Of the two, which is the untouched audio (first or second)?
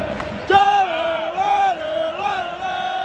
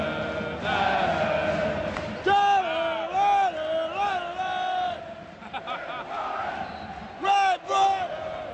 second